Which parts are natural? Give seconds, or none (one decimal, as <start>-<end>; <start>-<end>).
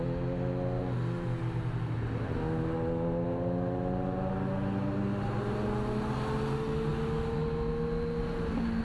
0.0-8.8